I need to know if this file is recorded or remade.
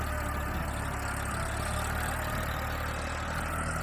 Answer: recorded